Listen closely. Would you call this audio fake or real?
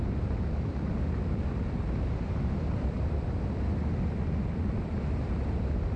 fake